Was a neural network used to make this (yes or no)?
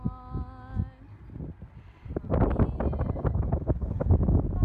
no